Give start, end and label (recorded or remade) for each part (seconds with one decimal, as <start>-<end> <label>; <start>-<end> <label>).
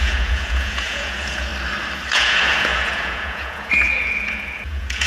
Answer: 0.0-1.5 remade; 1.5-2.1 recorded; 2.1-5.1 remade